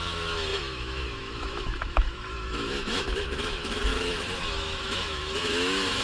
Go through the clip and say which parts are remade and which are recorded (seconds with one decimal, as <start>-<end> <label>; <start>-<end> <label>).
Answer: 0.0-6.0 remade